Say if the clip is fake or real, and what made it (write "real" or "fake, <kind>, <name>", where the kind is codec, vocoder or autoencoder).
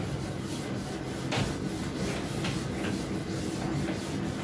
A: real